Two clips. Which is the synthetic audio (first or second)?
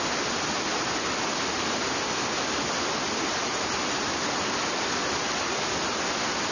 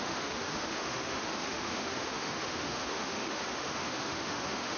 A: second